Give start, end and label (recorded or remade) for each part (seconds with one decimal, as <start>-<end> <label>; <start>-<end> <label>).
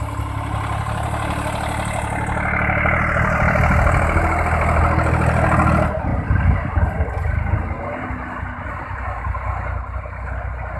0.0-10.8 recorded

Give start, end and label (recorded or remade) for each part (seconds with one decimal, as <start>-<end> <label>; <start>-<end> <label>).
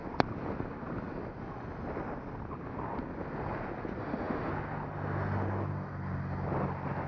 0.0-4.0 recorded; 4.0-4.5 remade; 4.5-7.1 recorded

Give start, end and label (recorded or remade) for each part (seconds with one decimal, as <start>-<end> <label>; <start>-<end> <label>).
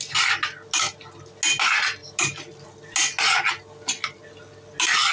0.0-5.1 recorded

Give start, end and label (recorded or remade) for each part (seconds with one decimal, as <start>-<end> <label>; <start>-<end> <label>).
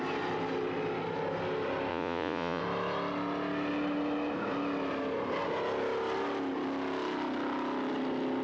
0.0-1.9 recorded; 1.9-2.6 remade; 2.6-8.4 recorded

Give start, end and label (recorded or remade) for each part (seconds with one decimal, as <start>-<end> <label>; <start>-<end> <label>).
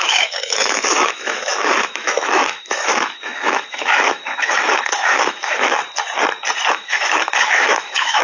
0.0-5.8 remade; 5.8-6.7 recorded; 6.7-8.2 remade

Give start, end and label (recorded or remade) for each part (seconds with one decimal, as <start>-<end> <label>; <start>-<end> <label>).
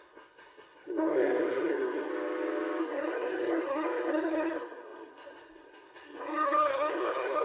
0.0-2.1 remade; 2.1-2.8 recorded; 2.8-7.4 remade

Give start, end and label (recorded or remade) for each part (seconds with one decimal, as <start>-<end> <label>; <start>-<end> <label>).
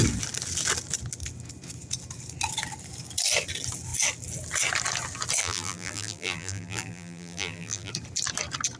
0.0-5.4 recorded; 5.4-7.9 remade; 7.9-8.8 recorded